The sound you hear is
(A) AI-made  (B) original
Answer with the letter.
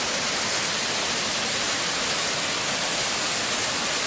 B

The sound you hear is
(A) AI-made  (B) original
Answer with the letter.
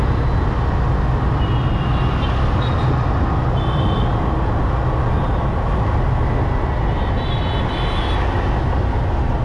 B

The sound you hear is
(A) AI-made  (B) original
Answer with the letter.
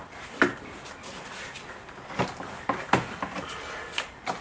B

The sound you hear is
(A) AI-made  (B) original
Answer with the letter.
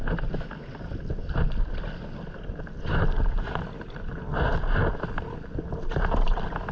B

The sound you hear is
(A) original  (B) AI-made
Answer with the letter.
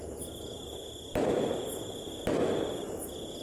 A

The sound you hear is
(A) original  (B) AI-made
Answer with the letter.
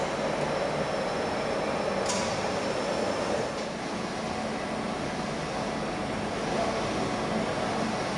A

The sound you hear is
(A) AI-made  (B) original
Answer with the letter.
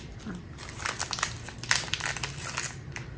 B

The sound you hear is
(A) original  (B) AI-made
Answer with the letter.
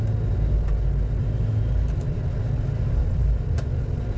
A